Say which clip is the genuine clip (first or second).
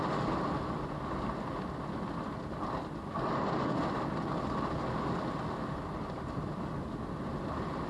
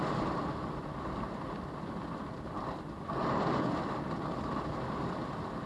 first